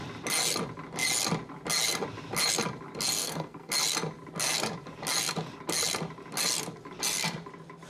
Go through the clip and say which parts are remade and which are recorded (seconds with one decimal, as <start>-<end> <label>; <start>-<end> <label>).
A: 0.0-3.2 recorded; 3.2-3.7 remade; 3.7-7.9 recorded